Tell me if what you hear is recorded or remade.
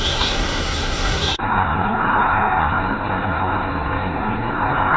remade